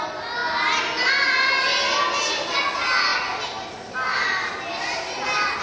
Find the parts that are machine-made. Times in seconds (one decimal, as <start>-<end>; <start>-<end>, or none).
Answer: none